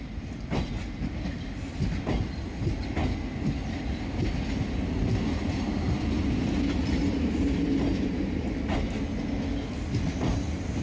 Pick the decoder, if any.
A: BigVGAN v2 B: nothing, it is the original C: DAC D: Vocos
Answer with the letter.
B